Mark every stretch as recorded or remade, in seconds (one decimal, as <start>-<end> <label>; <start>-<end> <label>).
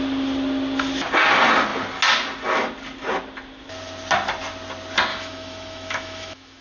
0.0-5.1 recorded; 5.1-6.6 remade